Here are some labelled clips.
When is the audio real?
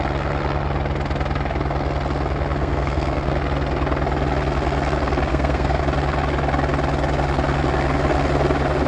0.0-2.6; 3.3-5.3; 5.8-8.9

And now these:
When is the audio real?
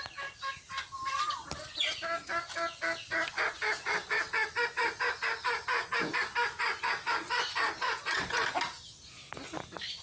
0.0-10.0